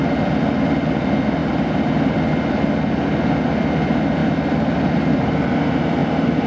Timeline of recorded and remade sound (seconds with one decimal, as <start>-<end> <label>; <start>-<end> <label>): 0.0-1.4 recorded; 1.4-2.3 remade; 2.3-4.2 recorded; 4.2-5.1 remade; 5.1-6.0 recorded; 6.0-6.5 remade